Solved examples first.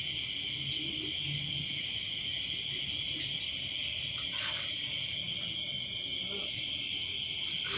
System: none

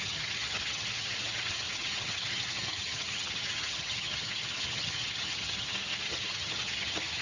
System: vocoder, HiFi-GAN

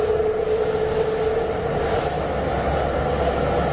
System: none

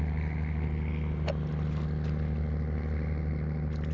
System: none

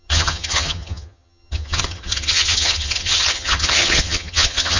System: vocoder, HiFi-GAN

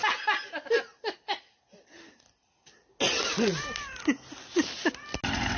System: none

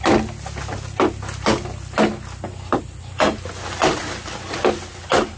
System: none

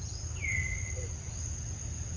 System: none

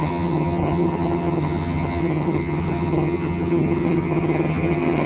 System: vocoder, HiFi-GAN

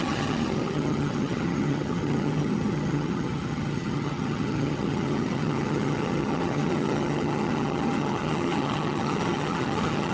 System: vocoder, HiFi-GAN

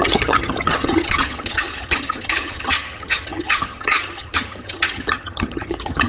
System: vocoder, HiFi-GAN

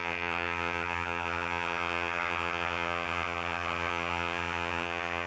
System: vocoder, HiFi-GAN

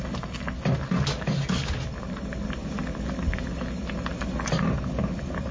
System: none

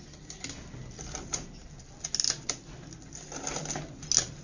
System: none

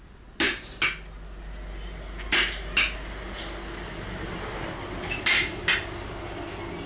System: none